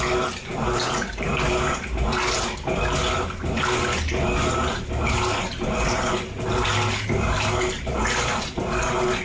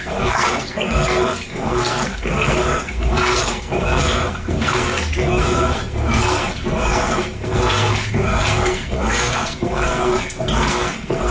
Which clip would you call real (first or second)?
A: first